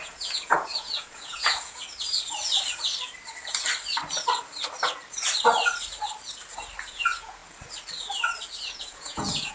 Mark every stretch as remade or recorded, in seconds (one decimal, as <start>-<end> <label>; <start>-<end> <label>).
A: 0.0-1.8 remade; 1.8-6.9 recorded; 6.9-7.4 remade; 7.4-8.7 recorded; 8.7-9.5 remade